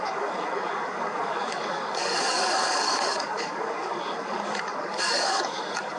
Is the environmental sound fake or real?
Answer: fake